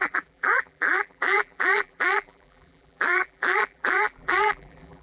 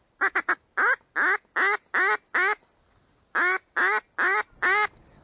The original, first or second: second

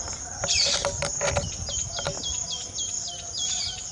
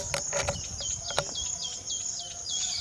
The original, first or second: first